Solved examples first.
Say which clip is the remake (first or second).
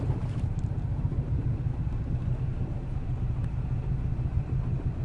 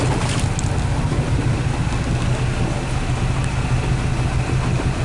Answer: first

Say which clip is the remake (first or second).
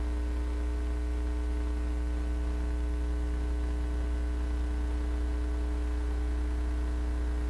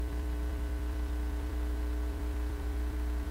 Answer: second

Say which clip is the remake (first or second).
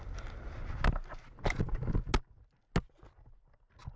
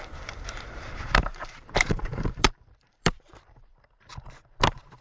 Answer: second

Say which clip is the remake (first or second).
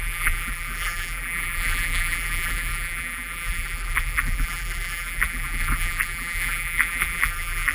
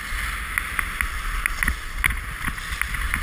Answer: first